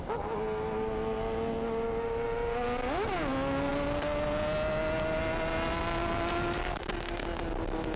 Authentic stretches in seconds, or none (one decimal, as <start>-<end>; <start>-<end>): 0.0-8.0